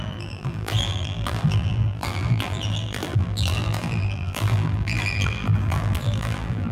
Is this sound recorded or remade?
remade